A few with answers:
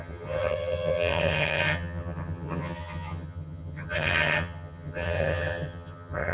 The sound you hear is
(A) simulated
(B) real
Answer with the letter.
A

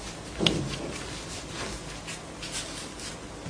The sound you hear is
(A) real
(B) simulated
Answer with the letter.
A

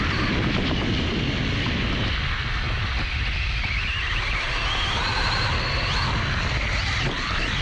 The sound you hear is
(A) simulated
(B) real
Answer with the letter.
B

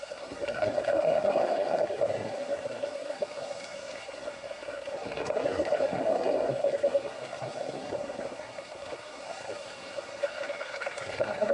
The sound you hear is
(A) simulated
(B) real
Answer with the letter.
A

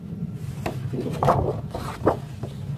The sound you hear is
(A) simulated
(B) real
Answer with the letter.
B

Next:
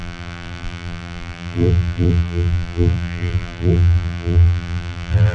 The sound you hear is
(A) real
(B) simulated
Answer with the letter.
B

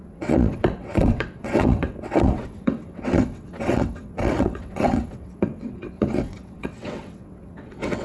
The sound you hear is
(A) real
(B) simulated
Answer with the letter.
B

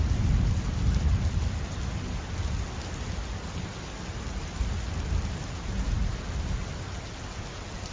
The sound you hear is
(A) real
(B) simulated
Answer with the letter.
A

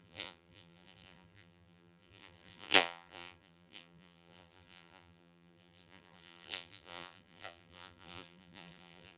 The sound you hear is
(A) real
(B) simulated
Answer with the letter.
B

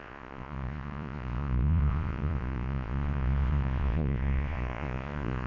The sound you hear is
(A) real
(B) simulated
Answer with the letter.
B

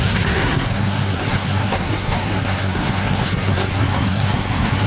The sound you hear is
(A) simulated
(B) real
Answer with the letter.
A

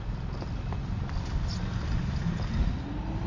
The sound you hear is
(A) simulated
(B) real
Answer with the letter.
B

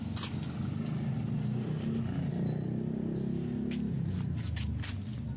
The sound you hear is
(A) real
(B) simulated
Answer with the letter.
A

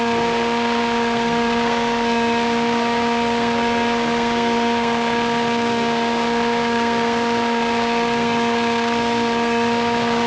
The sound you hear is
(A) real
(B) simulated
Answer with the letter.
B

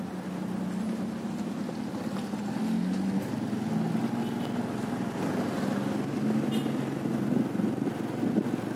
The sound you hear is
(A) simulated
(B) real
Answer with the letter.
B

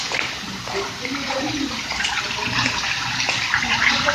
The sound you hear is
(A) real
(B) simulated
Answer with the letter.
A